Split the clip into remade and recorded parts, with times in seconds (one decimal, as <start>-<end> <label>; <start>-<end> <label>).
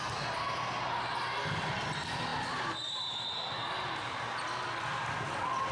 0.0-5.7 recorded